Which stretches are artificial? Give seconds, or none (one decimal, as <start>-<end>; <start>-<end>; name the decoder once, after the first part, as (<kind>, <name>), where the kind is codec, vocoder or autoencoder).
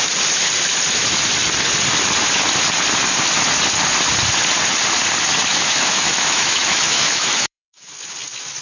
5.5-7.8 (autoencoder, DAC-VAE)